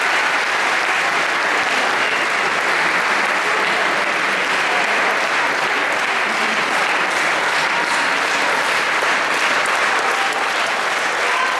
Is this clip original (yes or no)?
yes